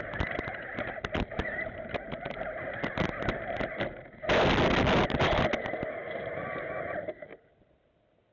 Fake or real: real